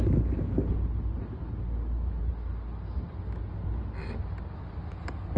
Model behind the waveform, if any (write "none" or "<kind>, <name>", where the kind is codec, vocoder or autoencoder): none